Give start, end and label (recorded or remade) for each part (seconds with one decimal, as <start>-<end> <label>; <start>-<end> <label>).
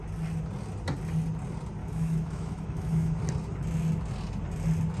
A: 0.0-1.8 recorded; 1.8-3.2 remade; 3.2-5.0 recorded